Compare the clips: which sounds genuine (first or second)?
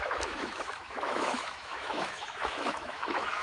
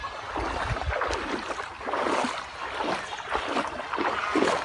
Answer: second